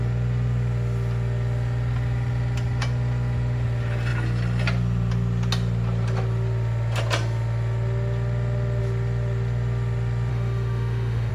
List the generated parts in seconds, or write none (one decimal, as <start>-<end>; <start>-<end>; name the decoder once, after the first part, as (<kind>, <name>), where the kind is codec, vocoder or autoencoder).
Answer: 10.3-11.3 (autoencoder, DAC-VAE)